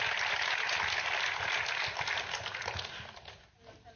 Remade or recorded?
recorded